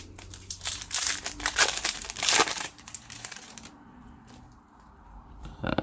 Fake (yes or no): yes